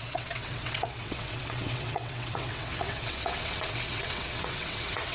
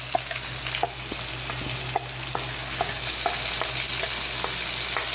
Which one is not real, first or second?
first